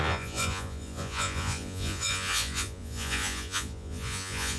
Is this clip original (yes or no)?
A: no